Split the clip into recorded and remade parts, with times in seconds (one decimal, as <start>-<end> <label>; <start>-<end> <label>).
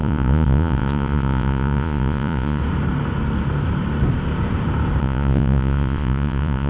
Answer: 0.0-2.6 remade; 2.6-5.0 recorded; 5.0-6.7 remade